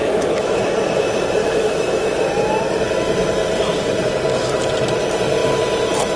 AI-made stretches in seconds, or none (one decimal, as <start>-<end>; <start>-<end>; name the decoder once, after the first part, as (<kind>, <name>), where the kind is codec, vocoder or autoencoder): 0.0-0.6 (autoencoder, DAC-VAE); 1.4-2.3